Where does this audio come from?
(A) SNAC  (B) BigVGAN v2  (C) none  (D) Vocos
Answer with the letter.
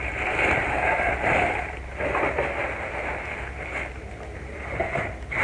B